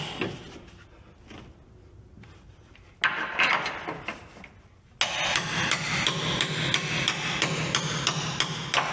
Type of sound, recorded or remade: recorded